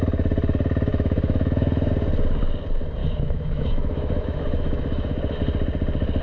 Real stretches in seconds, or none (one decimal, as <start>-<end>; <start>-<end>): 0.0-0.9; 1.9-3.0; 5.4-6.2